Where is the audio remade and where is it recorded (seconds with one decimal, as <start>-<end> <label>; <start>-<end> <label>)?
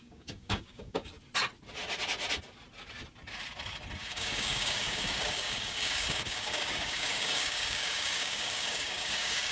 0.0-1.1 remade; 1.1-4.0 recorded; 4.0-9.5 remade